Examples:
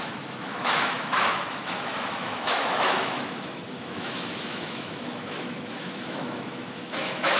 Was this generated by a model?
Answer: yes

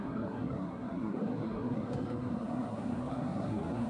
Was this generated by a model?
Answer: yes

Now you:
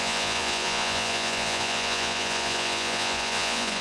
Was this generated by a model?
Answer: yes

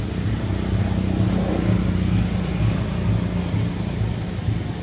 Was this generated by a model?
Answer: no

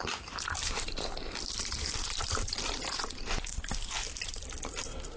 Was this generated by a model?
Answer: yes